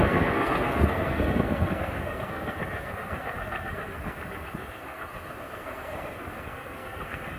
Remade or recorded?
remade